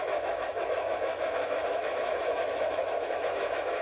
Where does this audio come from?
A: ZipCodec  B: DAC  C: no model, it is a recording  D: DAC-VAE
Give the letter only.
D